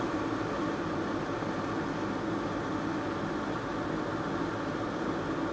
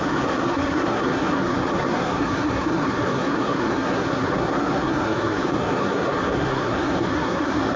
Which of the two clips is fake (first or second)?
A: second